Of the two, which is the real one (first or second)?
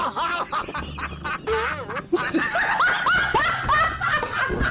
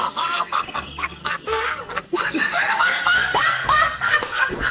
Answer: first